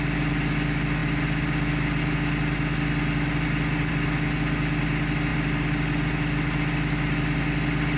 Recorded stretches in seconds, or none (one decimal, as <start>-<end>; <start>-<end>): 0.0-8.0